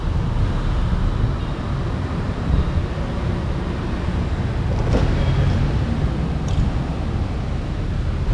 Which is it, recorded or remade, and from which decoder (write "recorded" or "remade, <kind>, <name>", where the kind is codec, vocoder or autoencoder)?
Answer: recorded